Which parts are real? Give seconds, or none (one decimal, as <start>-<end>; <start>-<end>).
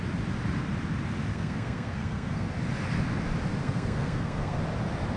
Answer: 0.0-1.3; 2.5-3.6; 4.6-5.2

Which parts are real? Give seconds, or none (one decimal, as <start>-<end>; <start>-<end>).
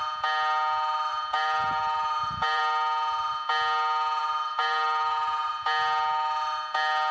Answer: 0.0-1.1; 2.6-4.2; 5.5-7.1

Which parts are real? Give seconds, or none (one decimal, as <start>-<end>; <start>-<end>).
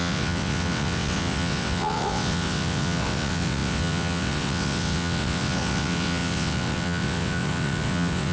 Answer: none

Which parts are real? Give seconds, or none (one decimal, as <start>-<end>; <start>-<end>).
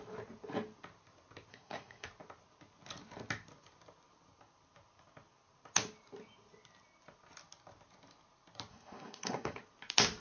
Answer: 0.0-1.5; 2.1-8.7; 9.6-10.2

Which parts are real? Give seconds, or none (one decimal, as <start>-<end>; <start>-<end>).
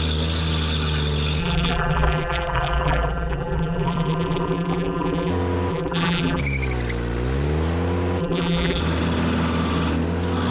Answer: 0.0-1.4; 5.3-5.7; 6.4-8.2; 8.8-10.5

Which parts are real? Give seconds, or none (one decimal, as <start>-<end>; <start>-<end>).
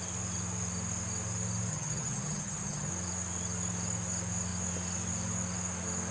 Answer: 0.0-1.7; 2.9-6.1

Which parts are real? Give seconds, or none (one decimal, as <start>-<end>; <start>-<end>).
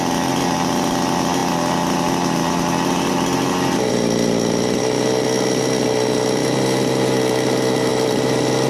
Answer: 0.0-7.9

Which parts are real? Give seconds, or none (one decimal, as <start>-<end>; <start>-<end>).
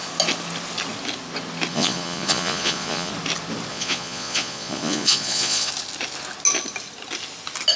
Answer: 0.0-1.7; 3.1-3.7; 5.7-7.8